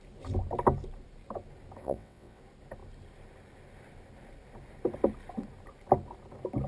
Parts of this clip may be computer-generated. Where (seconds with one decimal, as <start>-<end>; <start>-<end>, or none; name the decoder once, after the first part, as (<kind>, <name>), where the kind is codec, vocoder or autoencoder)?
1.8-2.4 (vocoder, WaveNeXt)